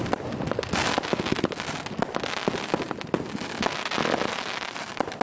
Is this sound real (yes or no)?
yes